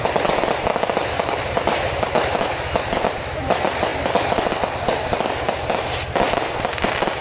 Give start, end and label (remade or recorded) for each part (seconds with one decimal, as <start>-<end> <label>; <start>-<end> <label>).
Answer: 0.0-7.2 recorded